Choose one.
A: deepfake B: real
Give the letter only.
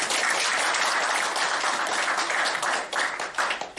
B